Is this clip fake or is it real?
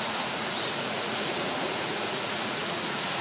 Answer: fake